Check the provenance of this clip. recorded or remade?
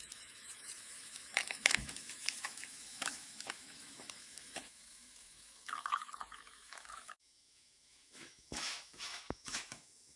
remade